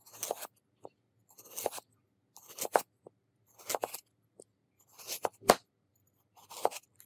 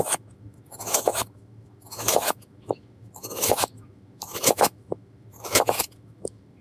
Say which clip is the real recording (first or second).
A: first